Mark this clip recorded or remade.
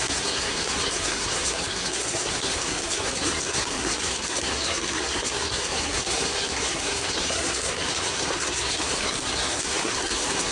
remade